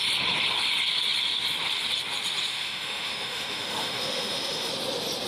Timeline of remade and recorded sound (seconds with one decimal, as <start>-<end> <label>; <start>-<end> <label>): 0.0-2.5 recorded; 2.5-4.7 remade; 4.7-5.3 recorded